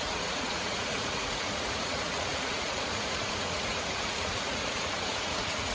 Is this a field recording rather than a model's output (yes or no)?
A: no